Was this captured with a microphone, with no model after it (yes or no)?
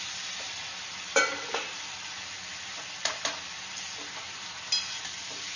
no